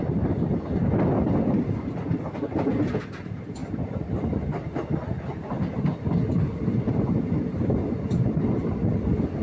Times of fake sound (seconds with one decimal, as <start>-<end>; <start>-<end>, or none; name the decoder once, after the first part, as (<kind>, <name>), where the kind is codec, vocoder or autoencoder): none